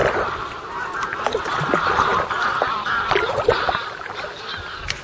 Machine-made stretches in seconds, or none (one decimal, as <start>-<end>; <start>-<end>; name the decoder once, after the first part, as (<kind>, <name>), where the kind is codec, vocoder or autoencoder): 2.1-3.5 (vocoder, BigVGAN v2)